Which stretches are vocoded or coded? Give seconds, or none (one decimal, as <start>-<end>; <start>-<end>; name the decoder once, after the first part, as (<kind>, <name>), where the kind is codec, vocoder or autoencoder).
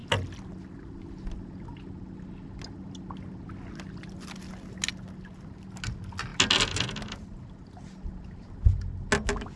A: none